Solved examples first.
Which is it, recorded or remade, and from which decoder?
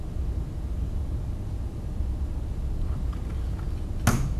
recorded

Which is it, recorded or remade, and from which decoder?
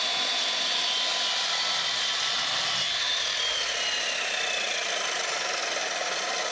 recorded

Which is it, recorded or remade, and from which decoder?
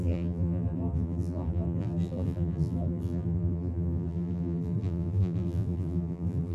remade, vocoder, BigVGAN v2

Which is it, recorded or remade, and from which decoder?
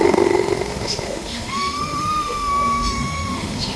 remade, autoencoder, DAC-VAE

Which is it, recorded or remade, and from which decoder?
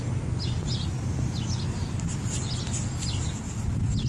recorded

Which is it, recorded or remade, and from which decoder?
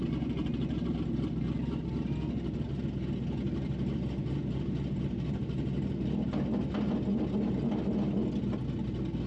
recorded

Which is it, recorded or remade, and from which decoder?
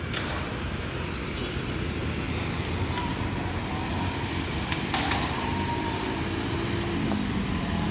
recorded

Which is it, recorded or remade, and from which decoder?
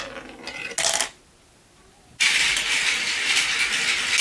recorded